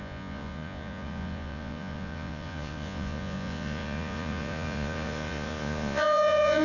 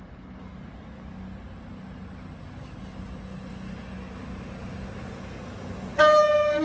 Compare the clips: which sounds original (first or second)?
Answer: second